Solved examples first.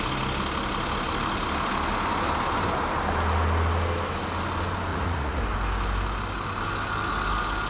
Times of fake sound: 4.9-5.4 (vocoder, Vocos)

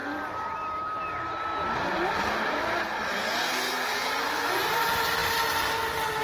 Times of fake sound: none

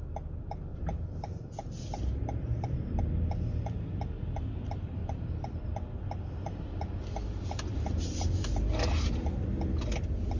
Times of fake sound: 0.7-3.0 (vocoder, BigVGAN v2)

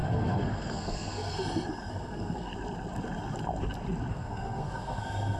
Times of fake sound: 0.0-1.3 (codec, SNAC); 1.9-2.5; 4.1-5.4

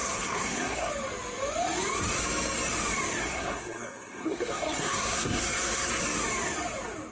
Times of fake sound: 0.0-0.9 (codec, SNAC); 3.2-6.0